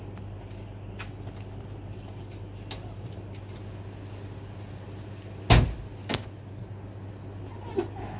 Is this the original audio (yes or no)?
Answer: yes